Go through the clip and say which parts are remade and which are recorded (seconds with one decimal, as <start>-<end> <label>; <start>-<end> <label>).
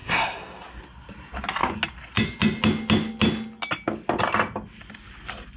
0.0-0.8 remade; 0.8-5.6 recorded